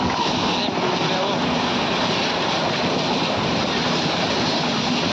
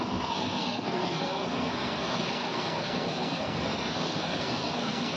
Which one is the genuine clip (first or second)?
first